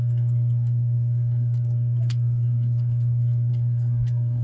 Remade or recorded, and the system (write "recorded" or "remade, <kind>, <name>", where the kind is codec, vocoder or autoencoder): remade, codec, SNAC